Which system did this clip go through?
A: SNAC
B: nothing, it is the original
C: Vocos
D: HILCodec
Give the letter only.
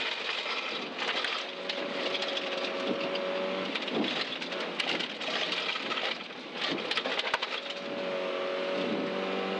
B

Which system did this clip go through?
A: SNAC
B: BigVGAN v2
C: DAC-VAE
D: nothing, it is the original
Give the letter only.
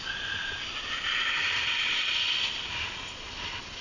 D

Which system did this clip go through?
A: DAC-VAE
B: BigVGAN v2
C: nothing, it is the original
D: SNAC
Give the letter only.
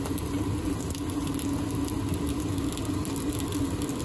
C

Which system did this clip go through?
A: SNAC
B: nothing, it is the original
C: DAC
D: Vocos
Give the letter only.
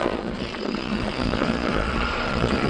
D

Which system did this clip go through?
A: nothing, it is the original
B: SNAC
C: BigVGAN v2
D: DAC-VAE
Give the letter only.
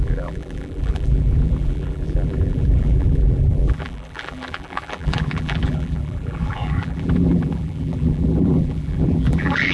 C